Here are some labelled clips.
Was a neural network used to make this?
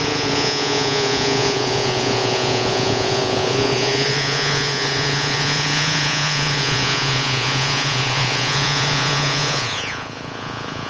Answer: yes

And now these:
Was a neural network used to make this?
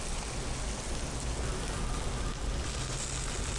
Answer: no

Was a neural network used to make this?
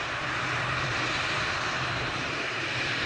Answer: yes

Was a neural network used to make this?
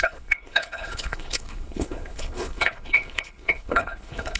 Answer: yes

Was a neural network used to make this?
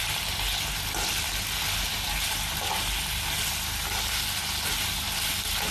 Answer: no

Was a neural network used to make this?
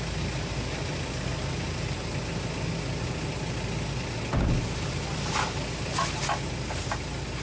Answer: no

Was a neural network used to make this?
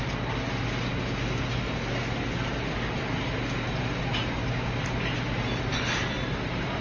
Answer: no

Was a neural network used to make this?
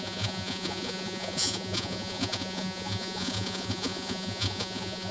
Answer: yes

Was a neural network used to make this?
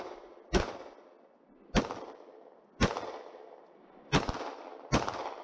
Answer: no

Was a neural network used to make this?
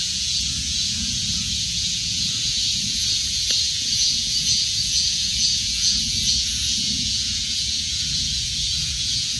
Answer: yes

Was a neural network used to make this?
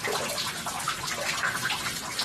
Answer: no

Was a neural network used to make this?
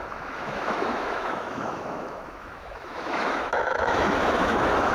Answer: yes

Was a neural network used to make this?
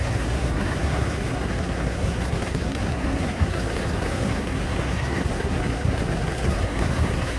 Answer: yes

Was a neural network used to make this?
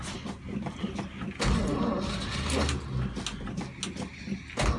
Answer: no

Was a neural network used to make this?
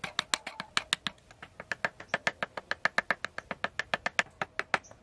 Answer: no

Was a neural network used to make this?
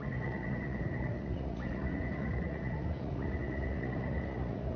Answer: yes